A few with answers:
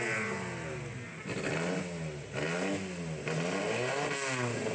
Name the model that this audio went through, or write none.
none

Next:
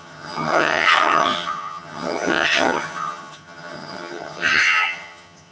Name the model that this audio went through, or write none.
vocoder, HiFi-GAN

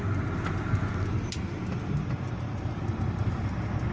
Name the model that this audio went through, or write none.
none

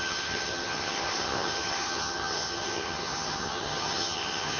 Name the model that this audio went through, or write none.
vocoder, HiFi-GAN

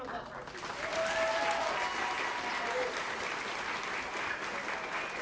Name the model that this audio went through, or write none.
none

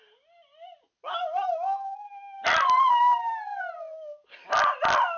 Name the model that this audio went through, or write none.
none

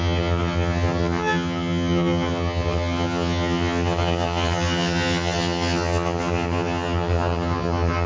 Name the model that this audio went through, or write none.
vocoder, HiFi-GAN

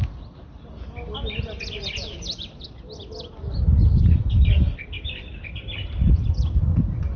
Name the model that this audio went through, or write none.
none